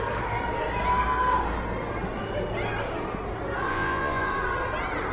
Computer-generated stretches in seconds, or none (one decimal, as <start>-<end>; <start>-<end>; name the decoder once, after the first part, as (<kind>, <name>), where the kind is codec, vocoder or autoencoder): 3.7-4.3 (vocoder, Vocos)